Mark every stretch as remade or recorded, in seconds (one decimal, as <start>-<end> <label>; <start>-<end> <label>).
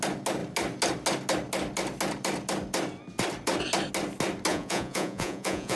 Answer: 0.0-4.5 recorded; 4.5-5.8 remade